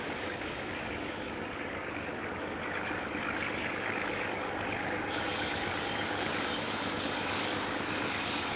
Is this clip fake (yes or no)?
yes